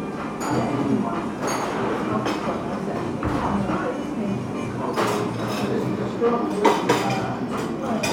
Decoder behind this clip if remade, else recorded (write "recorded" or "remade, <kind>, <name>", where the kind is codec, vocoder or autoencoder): recorded